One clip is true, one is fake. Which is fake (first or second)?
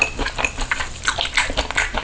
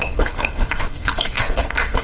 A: second